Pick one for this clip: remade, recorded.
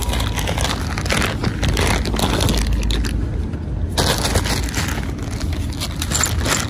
recorded